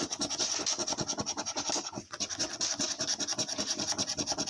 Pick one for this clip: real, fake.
real